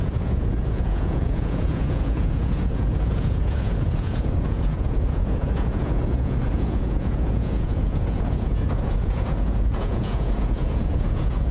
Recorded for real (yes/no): no